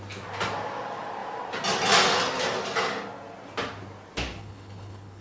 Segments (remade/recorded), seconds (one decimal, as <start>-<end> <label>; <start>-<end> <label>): 0.0-4.4 recorded; 4.4-5.2 remade

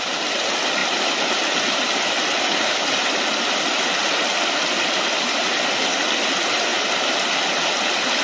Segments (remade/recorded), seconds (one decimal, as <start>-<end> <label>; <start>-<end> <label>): 0.0-8.2 recorded

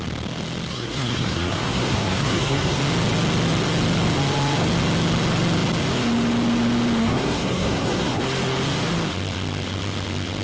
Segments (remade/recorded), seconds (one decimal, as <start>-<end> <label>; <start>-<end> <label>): 0.0-0.7 recorded; 0.7-2.8 remade; 2.8-7.0 recorded; 7.0-8.2 remade; 8.2-10.4 recorded

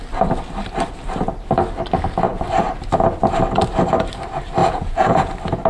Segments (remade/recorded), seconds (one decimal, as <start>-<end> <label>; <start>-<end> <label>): 0.0-4.6 recorded; 4.6-5.3 remade; 5.3-5.7 recorded

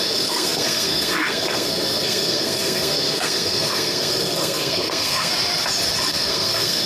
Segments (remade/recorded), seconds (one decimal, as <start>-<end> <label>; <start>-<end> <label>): 0.0-5.3 remade; 5.3-6.1 recorded; 6.1-6.9 remade

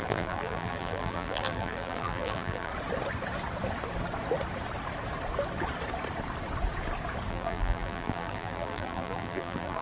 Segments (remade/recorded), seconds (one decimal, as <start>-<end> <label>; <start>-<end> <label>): 0.0-2.7 remade; 2.7-7.3 recorded; 7.3-9.8 remade

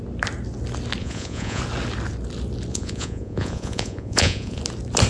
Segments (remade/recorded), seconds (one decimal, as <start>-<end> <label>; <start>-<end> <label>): 0.0-1.0 recorded; 1.0-1.6 remade; 1.6-2.7 recorded; 2.7-4.6 remade; 4.6-5.1 recorded

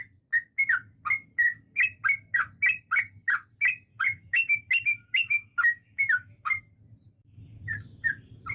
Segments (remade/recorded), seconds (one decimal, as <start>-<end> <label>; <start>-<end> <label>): 0.0-3.9 recorded; 3.9-6.7 remade; 6.7-8.5 recorded